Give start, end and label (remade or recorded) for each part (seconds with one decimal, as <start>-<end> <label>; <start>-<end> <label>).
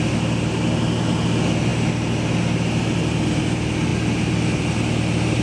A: 0.0-5.4 recorded